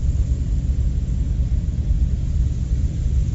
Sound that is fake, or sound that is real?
fake